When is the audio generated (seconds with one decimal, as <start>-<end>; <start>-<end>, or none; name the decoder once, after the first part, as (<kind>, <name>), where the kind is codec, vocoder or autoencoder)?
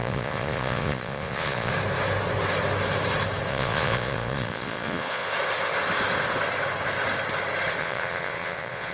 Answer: 0.0-1.7 (vocoder, Vocos); 3.5-5.2; 7.8-8.9